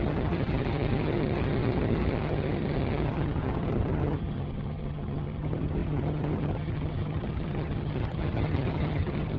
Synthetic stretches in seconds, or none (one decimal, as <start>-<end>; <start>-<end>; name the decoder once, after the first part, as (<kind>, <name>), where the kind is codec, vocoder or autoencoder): 0.0-9.4 (vocoder, HiFi-GAN)